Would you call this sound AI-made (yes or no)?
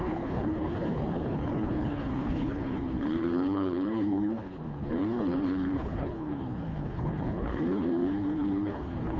yes